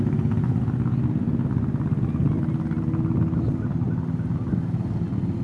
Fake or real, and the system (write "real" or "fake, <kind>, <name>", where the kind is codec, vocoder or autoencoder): real